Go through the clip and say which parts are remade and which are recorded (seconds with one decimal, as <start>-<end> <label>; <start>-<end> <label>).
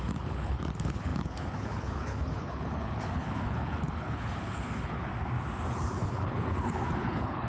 0.0-5.1 remade; 5.1-5.7 recorded; 5.7-7.5 remade